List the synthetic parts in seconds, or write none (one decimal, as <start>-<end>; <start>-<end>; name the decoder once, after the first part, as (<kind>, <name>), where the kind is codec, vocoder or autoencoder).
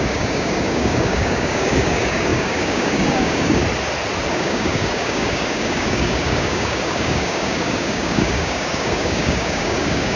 0.0-3.6 (codec, DAC); 4.3-10.2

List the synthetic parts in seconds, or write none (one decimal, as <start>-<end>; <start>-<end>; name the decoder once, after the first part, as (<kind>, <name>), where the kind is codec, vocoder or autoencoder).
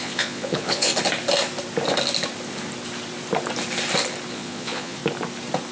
0.0-0.9 (vocoder, Vocos); 4.3-5.0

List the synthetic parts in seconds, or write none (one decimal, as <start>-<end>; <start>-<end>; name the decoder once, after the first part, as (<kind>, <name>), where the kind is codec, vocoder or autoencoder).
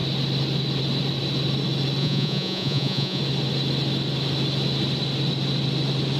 2.0-3.2 (vocoder, Vocos)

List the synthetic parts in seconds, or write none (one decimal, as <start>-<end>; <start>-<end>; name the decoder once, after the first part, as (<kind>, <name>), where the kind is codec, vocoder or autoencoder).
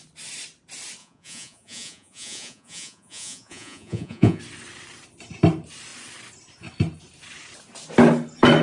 1.0-4.4 (vocoder, Vocos)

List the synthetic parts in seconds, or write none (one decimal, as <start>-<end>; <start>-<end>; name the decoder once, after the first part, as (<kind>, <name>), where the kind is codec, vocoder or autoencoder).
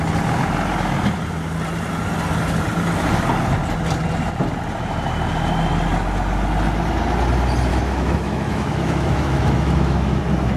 7.7-10.2 (autoencoder, DAC-VAE)